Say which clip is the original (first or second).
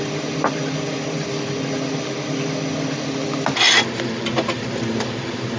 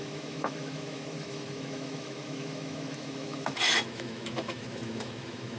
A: first